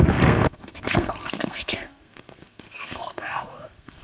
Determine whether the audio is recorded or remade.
remade